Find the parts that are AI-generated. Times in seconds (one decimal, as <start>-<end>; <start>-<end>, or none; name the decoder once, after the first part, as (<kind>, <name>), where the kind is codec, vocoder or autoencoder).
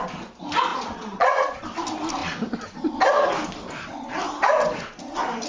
0.7-1.6 (vocoder, Vocos)